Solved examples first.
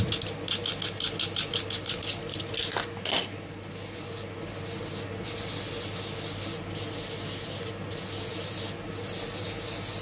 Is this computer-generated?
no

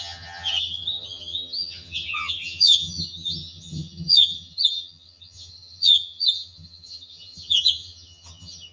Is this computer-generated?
yes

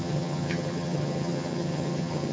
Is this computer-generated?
yes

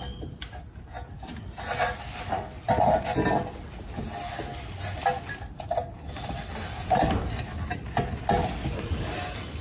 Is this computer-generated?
no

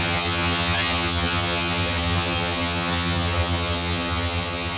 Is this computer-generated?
yes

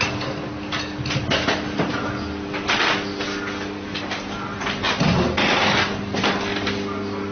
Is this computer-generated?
no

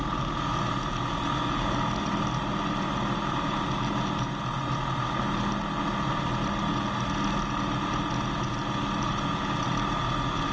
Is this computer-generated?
no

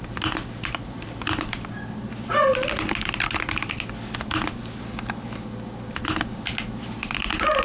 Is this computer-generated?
no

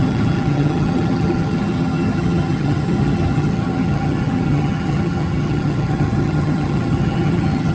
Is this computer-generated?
yes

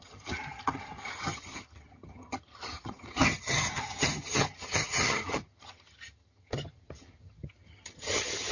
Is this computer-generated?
yes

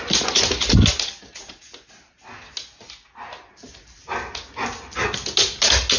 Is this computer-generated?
no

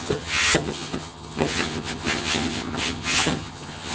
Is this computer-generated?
yes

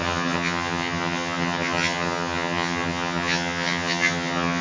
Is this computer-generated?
yes